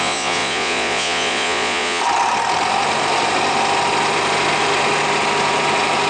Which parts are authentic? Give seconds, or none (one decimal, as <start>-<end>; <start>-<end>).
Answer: 2.0-6.1